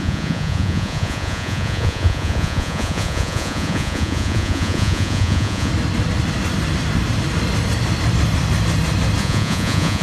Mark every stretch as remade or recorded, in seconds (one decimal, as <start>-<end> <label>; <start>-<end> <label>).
0.0-5.7 remade; 5.7-9.2 recorded; 9.2-10.0 remade